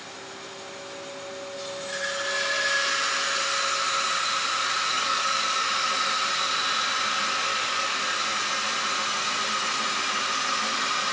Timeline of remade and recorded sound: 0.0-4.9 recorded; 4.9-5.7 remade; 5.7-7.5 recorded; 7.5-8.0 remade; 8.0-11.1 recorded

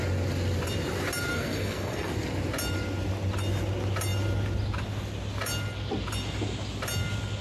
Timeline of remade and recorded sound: 0.0-1.3 recorded; 1.3-2.1 remade; 2.1-7.4 recorded

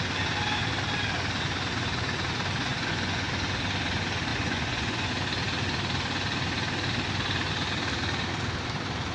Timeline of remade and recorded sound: 0.0-2.7 recorded; 2.7-3.3 remade; 3.3-4.3 recorded; 4.3-5.1 remade; 5.1-9.1 recorded

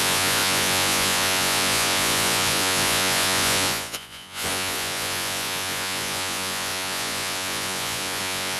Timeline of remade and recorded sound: 0.0-8.6 remade

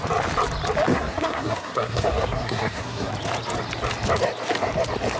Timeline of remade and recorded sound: 0.0-0.9 recorded; 0.9-3.1 remade; 3.1-5.2 recorded